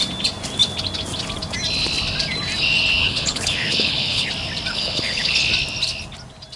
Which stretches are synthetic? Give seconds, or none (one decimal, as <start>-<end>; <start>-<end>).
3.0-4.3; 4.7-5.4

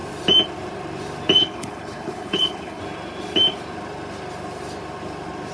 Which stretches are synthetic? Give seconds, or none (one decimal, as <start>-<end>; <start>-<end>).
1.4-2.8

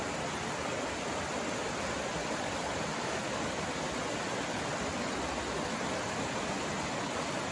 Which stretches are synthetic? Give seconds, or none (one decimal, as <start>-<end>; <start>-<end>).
none

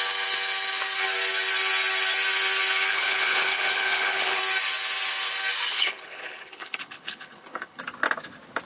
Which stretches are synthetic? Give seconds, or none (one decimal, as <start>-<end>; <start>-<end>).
2.9-4.4; 5.7-7.8

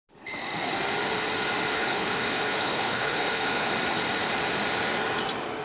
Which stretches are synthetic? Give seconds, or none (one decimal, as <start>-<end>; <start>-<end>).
1.7-3.7

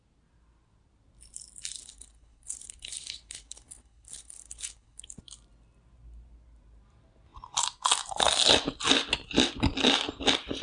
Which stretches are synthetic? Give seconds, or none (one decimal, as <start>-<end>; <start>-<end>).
1.8-5.2

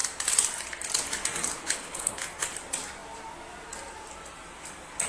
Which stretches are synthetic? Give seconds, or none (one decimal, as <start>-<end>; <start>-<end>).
1.6-2.2